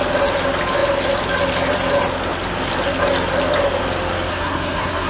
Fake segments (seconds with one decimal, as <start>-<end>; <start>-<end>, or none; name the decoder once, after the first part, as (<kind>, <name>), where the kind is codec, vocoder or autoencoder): 4.3-5.1 (codec, SNAC)

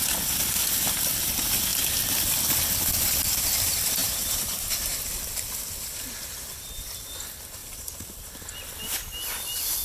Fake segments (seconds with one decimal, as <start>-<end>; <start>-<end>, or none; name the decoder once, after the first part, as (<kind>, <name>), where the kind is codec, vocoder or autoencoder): 4.0-5.1 (vocoder, BigVGAN v2); 7.6-8.3